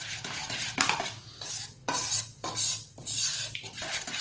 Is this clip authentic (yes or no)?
yes